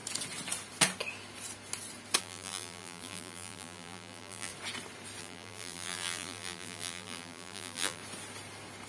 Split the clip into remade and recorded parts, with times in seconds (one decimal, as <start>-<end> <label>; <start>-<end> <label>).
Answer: 0.0-2.2 recorded; 2.2-4.5 remade; 4.5-5.2 recorded; 5.2-8.0 remade; 8.0-8.9 recorded